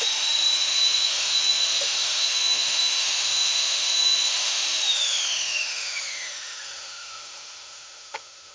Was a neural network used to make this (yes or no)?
yes